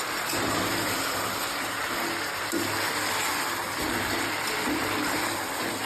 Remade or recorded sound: recorded